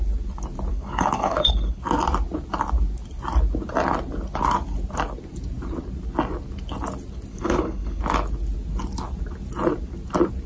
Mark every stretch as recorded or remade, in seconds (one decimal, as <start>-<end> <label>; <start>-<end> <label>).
0.0-0.7 recorded; 0.7-1.8 remade; 1.8-7.3 recorded; 7.3-8.0 remade; 8.0-10.5 recorded